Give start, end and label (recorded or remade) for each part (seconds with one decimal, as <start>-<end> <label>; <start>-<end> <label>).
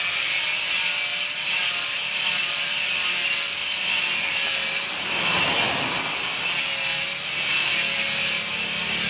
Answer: 0.0-1.1 recorded; 1.1-6.0 remade; 6.0-9.1 recorded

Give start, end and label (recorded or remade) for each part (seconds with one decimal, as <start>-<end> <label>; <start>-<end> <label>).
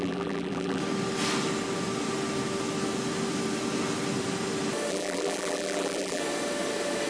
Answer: 0.0-0.8 remade; 0.8-4.9 recorded; 4.9-6.2 remade; 6.2-7.1 recorded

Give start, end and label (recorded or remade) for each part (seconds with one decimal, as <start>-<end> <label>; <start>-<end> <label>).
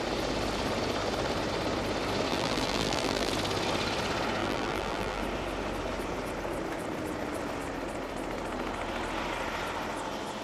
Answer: 0.0-2.3 recorded; 2.3-3.3 remade; 3.3-4.4 recorded; 4.4-5.2 remade; 5.2-10.4 recorded